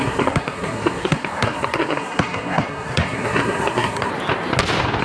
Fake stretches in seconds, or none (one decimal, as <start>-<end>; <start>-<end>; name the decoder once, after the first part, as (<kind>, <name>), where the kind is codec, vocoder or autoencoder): 0.0-4.1 (codec, SNAC)